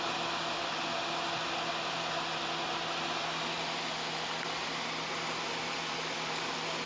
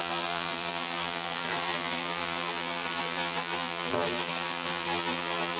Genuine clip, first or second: first